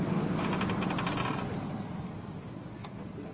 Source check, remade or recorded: recorded